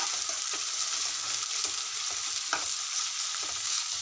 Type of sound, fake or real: real